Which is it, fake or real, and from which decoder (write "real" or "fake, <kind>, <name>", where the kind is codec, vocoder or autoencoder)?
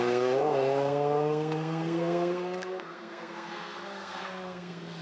fake, codec, SNAC